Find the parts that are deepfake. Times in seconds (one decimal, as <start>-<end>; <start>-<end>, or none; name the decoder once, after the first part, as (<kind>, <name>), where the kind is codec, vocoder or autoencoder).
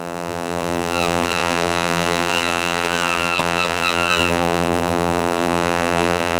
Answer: 0.0-6.4 (vocoder, BigVGAN v2)